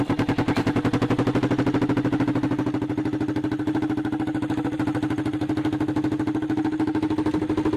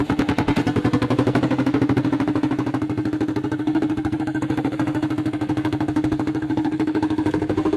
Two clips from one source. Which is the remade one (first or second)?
second